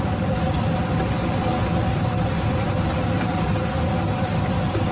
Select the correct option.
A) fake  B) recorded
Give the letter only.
B